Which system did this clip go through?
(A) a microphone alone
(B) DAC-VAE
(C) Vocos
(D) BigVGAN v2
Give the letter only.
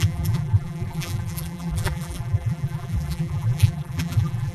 D